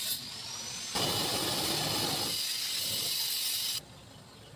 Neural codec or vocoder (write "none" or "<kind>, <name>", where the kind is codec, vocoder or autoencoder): none